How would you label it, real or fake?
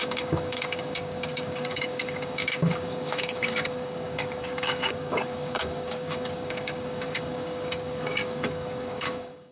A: fake